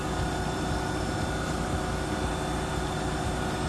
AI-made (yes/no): no